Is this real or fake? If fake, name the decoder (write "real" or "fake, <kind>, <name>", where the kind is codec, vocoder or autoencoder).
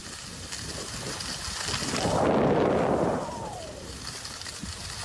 real